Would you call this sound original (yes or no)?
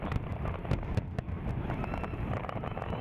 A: yes